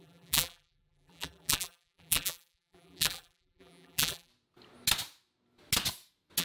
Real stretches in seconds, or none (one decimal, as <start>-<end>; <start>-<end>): 4.3-6.4